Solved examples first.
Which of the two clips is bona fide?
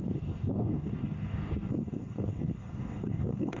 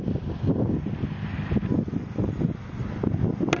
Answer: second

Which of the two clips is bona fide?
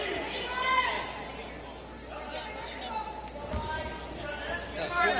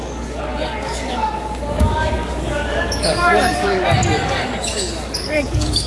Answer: first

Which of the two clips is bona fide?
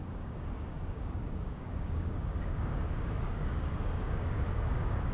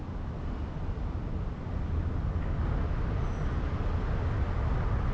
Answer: second